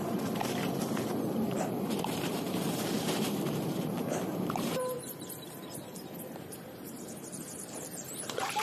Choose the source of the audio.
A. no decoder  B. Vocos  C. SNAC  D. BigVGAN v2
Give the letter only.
D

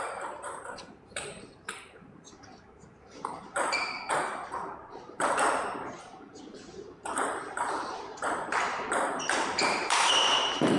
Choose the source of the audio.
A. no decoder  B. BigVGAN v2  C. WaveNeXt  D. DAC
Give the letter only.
B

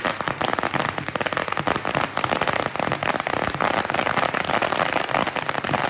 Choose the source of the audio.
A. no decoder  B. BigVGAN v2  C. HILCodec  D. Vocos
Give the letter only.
B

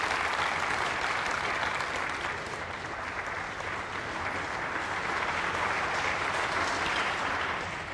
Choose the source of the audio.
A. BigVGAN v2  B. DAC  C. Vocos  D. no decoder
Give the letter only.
D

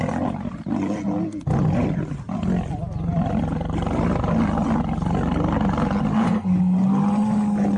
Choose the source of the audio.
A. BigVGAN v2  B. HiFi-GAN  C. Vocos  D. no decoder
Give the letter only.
D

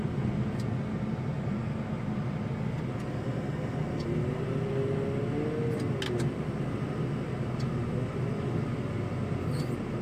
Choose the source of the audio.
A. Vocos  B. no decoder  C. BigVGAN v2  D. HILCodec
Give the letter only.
B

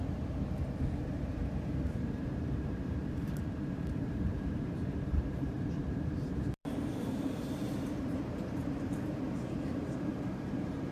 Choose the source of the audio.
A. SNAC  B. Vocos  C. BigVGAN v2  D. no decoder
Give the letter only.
C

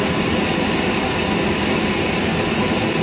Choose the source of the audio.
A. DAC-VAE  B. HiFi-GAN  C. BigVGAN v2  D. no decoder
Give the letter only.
C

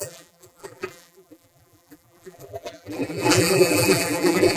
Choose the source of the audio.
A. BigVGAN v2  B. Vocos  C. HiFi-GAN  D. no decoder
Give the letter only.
A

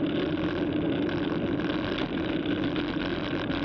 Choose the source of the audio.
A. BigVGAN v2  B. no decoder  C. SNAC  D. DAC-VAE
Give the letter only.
B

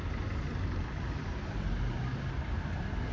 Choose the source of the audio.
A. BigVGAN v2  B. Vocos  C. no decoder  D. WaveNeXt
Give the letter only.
C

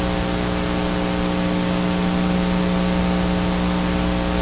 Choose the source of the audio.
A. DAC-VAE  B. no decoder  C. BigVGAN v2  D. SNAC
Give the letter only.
B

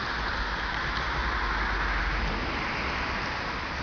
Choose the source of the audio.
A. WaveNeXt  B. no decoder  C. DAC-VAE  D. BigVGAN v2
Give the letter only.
B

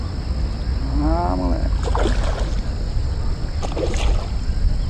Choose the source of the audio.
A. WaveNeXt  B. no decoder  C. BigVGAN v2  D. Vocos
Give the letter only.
B